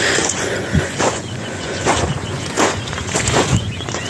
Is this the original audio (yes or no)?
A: no